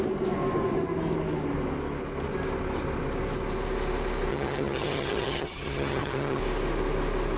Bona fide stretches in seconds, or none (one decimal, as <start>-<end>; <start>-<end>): 0.0-4.3; 6.4-7.4